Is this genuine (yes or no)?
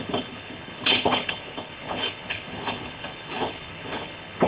no